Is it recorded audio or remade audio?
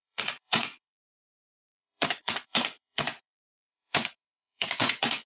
remade